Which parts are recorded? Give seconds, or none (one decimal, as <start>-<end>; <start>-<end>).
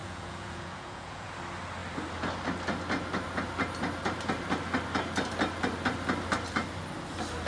1.3-7.5